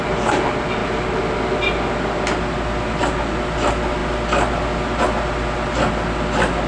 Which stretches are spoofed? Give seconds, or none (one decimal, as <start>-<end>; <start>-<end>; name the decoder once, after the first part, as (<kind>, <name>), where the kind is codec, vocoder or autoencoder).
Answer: none

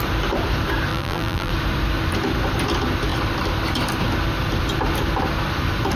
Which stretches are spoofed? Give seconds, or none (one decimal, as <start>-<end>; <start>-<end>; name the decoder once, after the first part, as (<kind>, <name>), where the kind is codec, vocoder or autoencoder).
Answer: 0.9-1.5 (vocoder, BigVGAN v2)